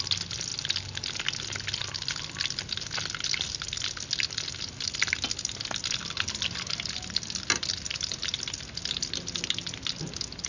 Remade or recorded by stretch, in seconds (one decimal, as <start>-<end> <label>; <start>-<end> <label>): 0.0-10.5 recorded